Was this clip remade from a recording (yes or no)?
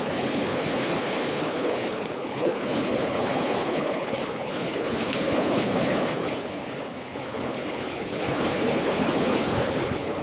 yes